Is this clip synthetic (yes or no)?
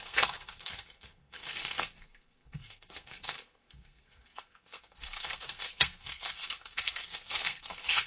yes